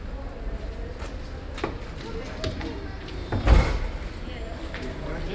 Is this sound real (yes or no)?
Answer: yes